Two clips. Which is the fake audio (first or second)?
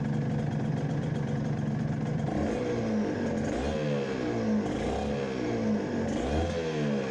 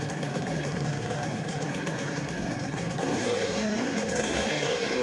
second